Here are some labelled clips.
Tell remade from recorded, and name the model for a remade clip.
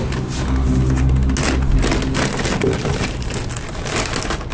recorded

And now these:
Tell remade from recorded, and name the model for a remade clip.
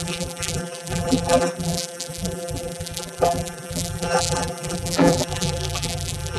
remade, vocoder, BigVGAN v2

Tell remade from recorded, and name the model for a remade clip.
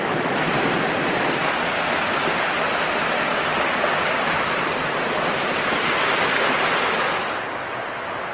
recorded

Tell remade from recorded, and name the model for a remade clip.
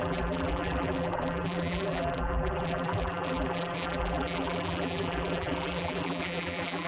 remade, vocoder, BigVGAN v2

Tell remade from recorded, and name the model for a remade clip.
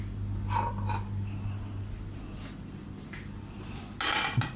recorded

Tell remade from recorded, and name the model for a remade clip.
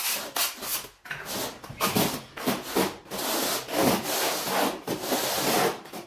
recorded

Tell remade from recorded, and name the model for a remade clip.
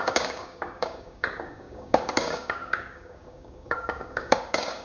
remade, codec, DAC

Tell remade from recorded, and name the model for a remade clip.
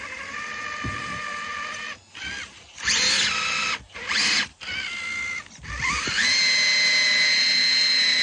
recorded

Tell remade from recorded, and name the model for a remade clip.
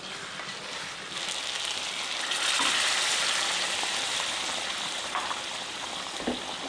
recorded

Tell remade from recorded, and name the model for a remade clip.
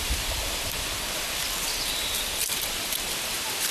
remade, vocoder, BigVGAN v2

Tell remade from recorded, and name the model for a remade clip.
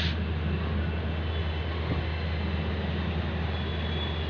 recorded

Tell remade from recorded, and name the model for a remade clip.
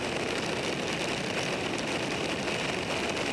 recorded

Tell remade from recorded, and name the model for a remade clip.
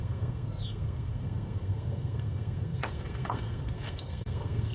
remade, codec, SNAC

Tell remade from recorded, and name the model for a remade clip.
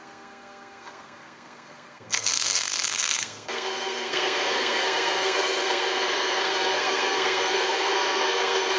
remade, codec, SNAC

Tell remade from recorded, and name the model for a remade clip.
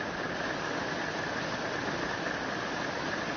recorded